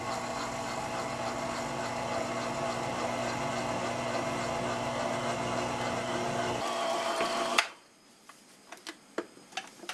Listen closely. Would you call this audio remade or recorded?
recorded